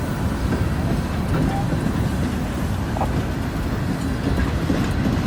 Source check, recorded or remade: recorded